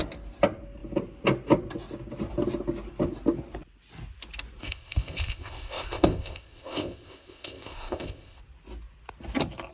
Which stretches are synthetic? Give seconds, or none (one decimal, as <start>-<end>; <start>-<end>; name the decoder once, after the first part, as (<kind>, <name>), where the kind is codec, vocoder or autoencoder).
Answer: 4.6-8.4 (codec, ZipCodec)